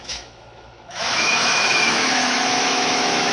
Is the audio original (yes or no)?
no